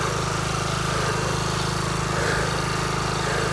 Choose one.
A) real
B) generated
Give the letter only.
A